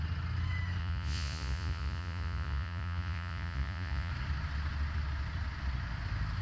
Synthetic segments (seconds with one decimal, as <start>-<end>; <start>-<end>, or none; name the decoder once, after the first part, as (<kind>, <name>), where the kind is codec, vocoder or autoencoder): 0.8-4.1 (vocoder, Vocos)